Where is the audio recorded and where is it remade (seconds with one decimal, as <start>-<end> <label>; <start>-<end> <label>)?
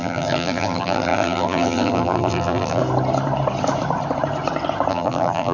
0.0-2.8 remade; 2.8-4.9 recorded; 4.9-5.5 remade